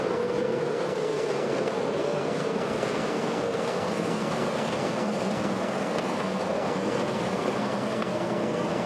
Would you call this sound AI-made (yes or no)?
yes